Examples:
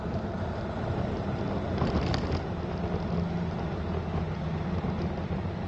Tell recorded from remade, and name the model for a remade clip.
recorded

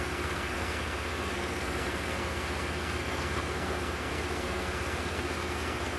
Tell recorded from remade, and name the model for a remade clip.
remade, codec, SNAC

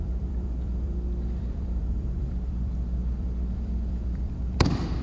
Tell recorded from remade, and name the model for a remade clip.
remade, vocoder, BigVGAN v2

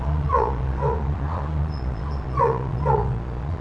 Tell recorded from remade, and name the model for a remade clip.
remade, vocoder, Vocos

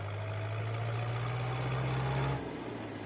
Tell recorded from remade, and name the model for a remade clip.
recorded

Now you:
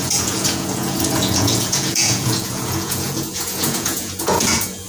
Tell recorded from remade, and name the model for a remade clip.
remade, vocoder, Vocos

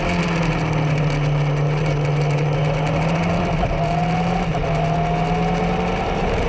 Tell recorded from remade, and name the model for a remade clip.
recorded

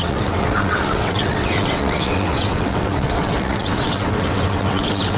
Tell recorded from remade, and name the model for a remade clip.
remade, vocoder, WaveNeXt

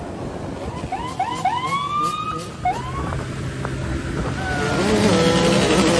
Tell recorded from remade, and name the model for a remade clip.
recorded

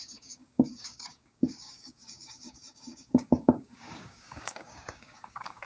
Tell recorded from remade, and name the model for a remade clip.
remade, codec, DAC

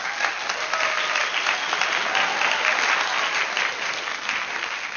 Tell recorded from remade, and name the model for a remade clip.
recorded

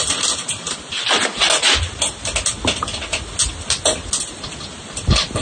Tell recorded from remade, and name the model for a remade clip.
recorded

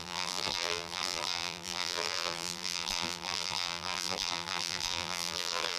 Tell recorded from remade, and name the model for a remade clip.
remade, vocoder, BigVGAN v2